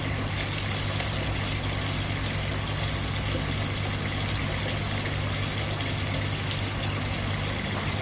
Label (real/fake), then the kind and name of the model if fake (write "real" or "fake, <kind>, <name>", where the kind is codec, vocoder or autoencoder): real